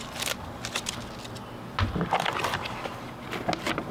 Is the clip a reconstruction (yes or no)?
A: no